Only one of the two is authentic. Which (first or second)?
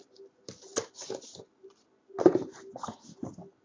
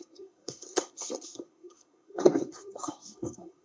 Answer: first